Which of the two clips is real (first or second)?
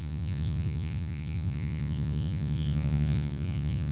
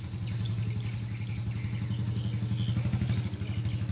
second